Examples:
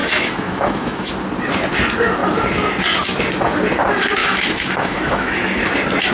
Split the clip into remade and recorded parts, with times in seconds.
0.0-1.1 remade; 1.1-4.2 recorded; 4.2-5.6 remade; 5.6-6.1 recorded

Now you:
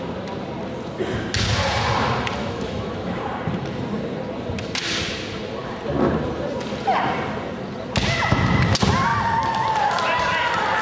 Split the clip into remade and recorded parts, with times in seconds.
0.0-2.4 recorded; 2.4-3.2 remade; 3.2-10.8 recorded

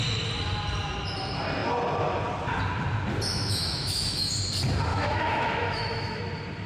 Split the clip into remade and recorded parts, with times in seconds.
0.0-3.3 recorded; 3.3-4.3 remade; 4.3-4.9 recorded; 4.9-6.2 remade; 6.2-6.7 recorded

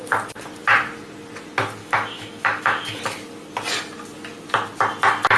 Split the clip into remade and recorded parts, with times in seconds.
0.0-1.8 recorded; 1.8-3.0 remade; 3.0-5.4 recorded

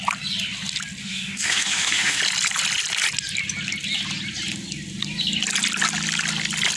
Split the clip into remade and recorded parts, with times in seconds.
0.0-1.0 recorded; 1.0-2.2 remade; 2.2-6.8 recorded